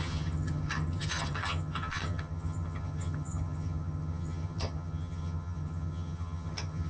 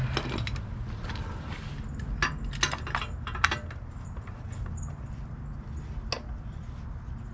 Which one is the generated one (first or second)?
first